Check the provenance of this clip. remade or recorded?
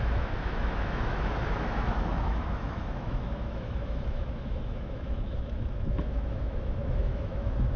remade